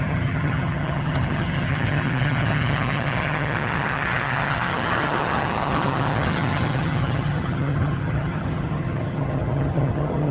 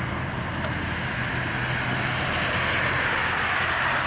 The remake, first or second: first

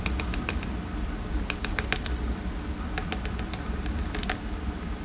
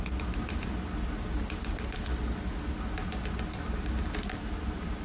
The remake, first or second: first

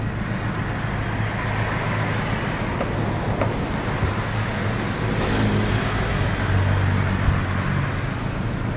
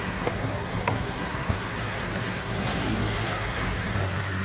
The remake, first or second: second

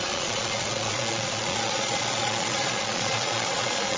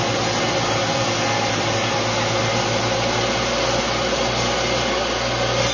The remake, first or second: first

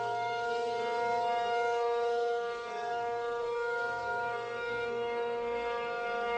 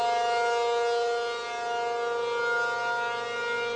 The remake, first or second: first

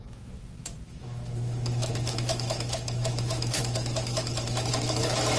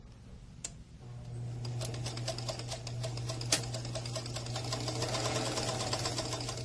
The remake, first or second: first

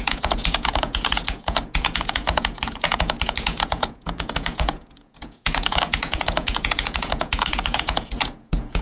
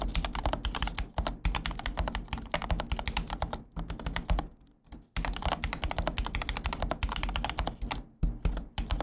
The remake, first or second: first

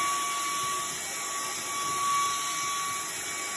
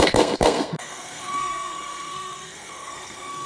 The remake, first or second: second